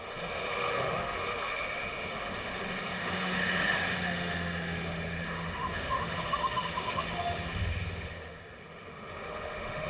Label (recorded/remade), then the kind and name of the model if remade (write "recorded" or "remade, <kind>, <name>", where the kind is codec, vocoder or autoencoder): remade, autoencoder, DAC-VAE